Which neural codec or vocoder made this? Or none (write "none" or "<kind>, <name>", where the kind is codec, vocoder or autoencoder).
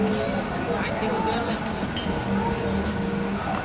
none